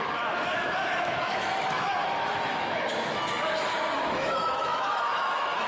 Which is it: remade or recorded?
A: remade